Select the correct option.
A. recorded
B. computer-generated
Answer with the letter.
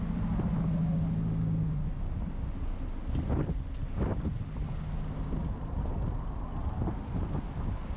A